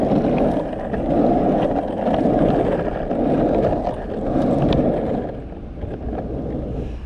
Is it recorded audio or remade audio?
recorded